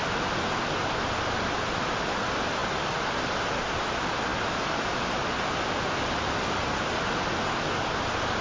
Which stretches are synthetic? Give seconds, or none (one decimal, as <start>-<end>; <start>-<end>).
none